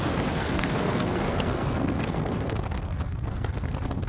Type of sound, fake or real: fake